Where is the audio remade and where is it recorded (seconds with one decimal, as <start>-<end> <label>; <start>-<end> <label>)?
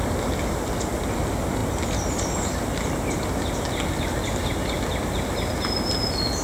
0.0-6.4 recorded